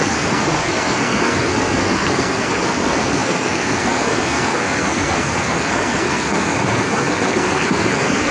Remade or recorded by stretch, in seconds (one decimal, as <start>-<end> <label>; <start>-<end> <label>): 0.0-8.3 remade